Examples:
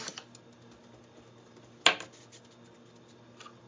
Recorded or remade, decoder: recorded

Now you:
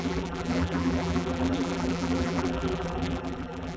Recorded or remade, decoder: remade, vocoder, BigVGAN v2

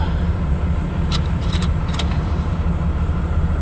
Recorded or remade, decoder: remade, vocoder, BigVGAN v2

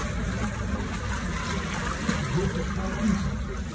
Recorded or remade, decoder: recorded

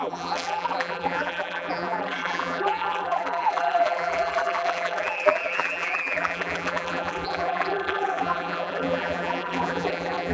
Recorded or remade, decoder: remade, vocoder, BigVGAN v2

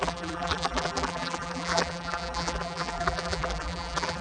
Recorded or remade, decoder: remade, vocoder, BigVGAN v2